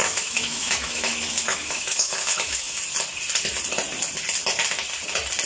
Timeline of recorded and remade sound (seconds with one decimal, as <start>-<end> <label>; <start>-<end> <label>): 0.0-2.8 remade; 2.8-5.5 recorded